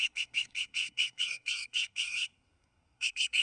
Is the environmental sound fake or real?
fake